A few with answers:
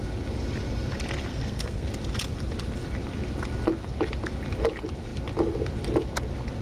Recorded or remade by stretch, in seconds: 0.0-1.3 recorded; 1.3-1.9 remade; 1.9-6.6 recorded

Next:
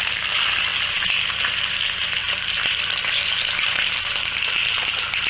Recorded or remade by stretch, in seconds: 0.0-5.3 recorded